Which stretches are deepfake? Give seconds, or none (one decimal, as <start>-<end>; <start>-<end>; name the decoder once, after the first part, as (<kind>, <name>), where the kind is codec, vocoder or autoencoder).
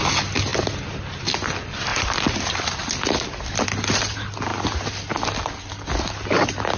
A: none